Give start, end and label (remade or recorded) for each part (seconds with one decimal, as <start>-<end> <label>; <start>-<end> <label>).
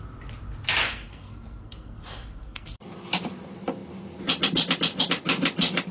0.0-0.8 recorded; 0.8-2.8 remade; 2.8-5.9 recorded